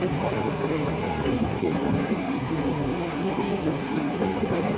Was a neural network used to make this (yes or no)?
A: yes